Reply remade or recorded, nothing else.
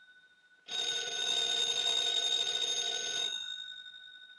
recorded